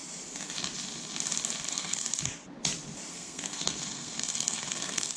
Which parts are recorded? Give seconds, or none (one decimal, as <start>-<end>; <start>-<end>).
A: 0.0-1.7; 2.1-3.1